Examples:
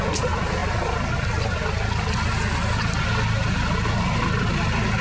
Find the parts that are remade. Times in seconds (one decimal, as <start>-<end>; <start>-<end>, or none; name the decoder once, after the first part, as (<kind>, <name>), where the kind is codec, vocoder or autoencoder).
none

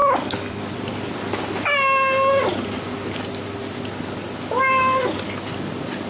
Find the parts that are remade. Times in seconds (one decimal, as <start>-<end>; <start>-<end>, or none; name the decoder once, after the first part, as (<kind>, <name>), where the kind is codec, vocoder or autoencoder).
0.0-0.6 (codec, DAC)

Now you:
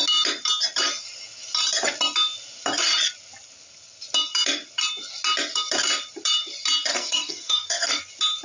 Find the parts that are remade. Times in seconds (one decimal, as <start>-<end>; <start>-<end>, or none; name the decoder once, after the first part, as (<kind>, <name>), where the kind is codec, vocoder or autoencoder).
6.9-8.0 (codec, SNAC)

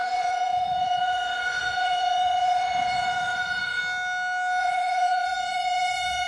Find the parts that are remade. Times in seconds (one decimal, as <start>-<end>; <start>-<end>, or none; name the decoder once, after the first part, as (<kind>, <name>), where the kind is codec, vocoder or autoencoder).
0.0-3.8 (vocoder, Vocos); 4.6-6.3

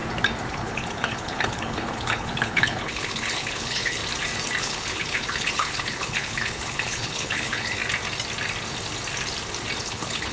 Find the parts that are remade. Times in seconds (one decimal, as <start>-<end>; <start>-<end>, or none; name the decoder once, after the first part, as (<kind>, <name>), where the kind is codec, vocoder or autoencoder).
0.5-4.0 (codec, HILCodec); 4.6-7.8; 9.8-10.3

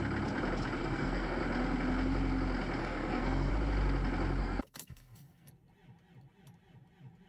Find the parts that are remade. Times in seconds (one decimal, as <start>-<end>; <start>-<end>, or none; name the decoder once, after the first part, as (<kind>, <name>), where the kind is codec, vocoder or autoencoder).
0.8-1.4 (codec, SNAC); 2.8-3.5; 4.4-5.5

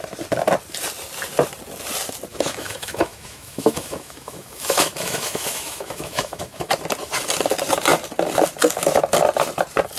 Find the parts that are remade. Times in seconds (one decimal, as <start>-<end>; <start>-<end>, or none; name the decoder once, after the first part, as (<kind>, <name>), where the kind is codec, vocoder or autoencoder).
2.3-6.7 (autoencoder, DAC-VAE)